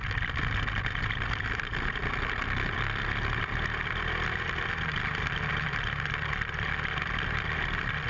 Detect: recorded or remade remade